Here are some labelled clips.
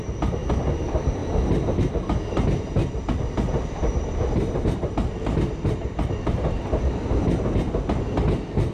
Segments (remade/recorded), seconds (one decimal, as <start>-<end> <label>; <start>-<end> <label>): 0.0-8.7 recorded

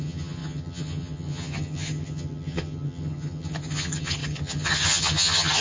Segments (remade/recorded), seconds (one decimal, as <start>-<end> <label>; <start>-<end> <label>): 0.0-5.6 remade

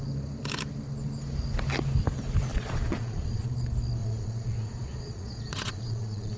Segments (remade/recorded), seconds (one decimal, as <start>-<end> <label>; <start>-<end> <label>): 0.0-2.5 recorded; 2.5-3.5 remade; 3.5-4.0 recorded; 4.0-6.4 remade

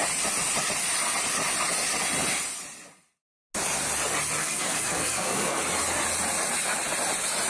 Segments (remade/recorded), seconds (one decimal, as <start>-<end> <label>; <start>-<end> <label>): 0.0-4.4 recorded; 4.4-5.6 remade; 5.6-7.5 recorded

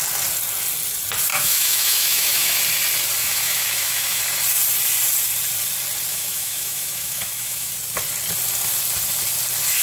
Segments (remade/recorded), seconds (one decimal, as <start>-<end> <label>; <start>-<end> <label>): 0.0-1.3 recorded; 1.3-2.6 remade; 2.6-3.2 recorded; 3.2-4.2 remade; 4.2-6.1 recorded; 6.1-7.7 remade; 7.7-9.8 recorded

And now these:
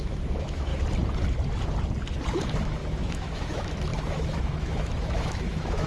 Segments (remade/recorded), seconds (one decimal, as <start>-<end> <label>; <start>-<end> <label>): 0.0-0.7 remade; 0.7-2.4 recorded; 2.4-5.9 remade

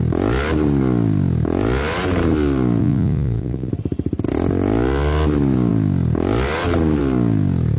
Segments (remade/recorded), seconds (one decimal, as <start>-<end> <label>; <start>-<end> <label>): 0.0-2.8 recorded; 2.8-3.7 remade; 3.7-7.8 recorded

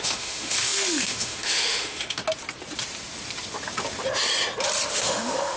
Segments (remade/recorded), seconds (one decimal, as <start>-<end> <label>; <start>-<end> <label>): 0.0-2.2 remade; 2.2-4.9 recorded; 4.9-5.6 remade